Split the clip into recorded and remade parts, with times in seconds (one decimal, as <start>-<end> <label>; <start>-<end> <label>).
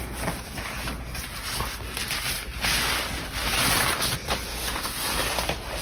0.0-4.5 recorded; 4.5-5.0 remade; 5.0-5.8 recorded